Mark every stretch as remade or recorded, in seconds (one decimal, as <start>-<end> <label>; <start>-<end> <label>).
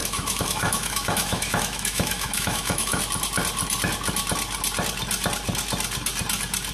0.0-3.0 remade; 3.0-6.7 recorded